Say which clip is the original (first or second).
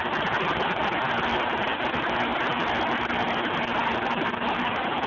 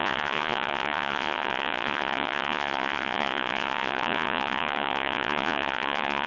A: first